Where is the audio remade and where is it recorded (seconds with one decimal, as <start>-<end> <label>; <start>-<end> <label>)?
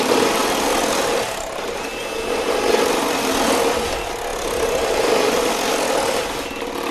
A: 0.0-6.9 recorded